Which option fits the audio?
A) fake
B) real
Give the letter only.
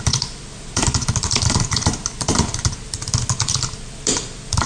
B